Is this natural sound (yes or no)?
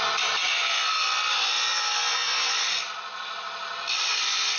yes